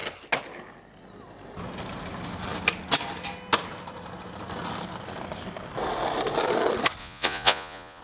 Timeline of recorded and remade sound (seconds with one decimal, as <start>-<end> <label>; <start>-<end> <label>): 0.0-7.0 recorded; 7.0-8.0 remade